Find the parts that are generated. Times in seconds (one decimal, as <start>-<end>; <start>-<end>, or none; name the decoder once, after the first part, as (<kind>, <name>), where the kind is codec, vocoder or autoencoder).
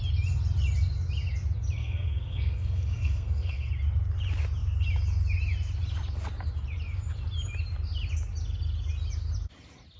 1.8-3.7 (codec, SNAC)